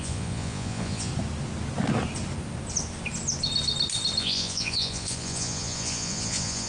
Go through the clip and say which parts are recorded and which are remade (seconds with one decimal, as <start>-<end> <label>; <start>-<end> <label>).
0.0-1.1 remade; 1.1-4.2 recorded; 4.2-6.7 remade